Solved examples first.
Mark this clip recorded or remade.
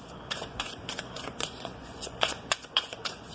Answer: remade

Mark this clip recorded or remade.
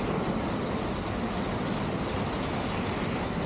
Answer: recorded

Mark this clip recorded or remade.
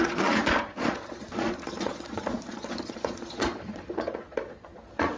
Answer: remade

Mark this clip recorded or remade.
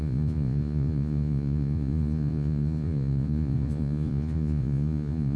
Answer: remade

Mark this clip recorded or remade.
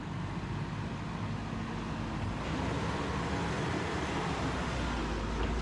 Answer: recorded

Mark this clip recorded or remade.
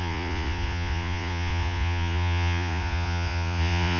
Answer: remade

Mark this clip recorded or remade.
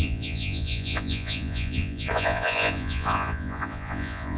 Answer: remade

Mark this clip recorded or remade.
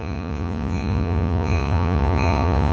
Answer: remade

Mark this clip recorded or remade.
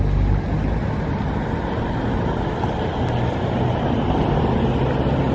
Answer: recorded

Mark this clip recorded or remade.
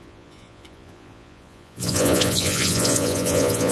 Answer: remade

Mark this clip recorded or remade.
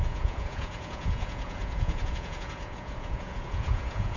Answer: remade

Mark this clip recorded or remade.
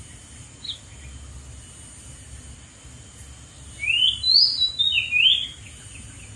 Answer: recorded